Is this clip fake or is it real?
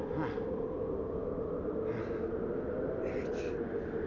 real